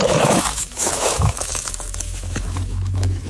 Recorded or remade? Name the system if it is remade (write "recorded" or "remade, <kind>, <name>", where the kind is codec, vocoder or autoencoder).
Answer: remade, autoencoder, DAC-VAE